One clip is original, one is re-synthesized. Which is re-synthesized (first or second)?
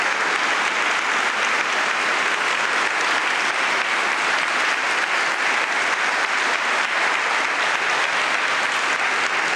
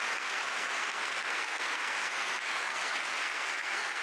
second